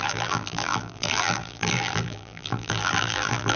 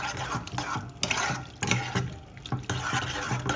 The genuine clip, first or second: second